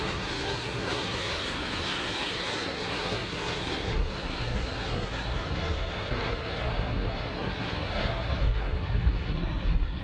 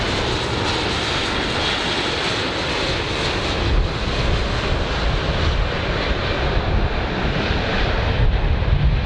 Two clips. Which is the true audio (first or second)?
second